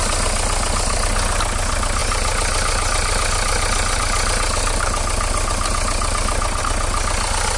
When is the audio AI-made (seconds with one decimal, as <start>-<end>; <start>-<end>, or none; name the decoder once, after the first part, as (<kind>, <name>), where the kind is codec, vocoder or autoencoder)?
none